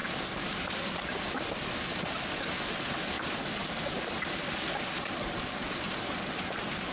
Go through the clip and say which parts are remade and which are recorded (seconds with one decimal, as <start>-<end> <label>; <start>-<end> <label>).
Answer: 0.0-6.9 recorded